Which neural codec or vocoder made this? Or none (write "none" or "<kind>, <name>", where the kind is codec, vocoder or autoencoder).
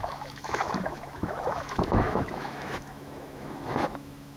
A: autoencoder, DAC-VAE